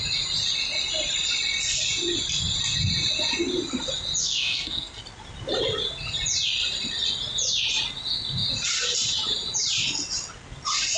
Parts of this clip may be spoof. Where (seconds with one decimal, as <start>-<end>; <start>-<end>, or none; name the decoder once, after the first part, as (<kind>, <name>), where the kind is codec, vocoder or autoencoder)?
4.2-5.0 (codec, SNAC)